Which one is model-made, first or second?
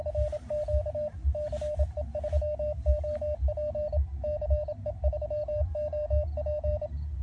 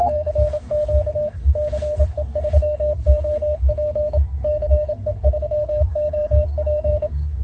second